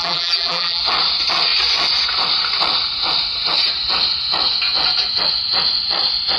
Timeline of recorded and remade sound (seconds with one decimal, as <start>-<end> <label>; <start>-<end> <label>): 0.0-0.8 remade; 0.8-6.4 recorded